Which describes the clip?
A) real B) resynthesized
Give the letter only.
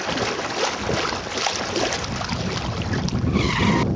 A